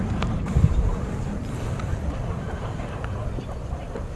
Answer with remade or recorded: recorded